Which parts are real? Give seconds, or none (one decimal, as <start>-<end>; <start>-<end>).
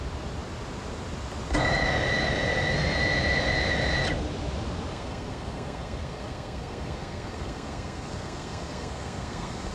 0.0-4.9